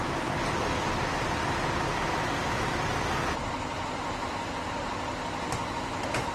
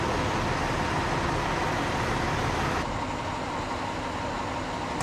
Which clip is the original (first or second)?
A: second